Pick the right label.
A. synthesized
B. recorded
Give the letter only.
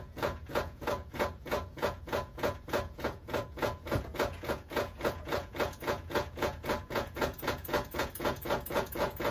A